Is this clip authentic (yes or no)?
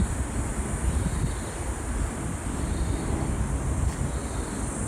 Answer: yes